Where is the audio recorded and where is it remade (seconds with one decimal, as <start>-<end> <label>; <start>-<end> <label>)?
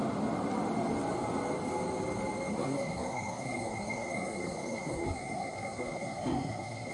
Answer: 0.0-2.5 recorded; 2.5-6.9 remade